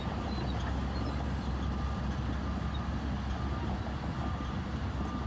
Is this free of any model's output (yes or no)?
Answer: yes